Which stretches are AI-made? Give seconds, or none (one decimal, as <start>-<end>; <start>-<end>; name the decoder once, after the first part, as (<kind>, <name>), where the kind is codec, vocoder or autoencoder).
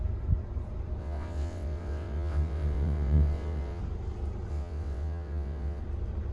1.0-3.8 (vocoder, WaveNeXt); 4.5-5.8